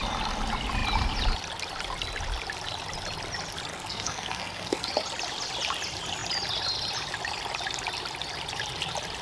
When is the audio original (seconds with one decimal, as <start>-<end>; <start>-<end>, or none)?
0.0-3.7; 4.9-9.2